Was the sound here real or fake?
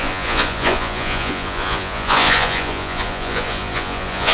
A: fake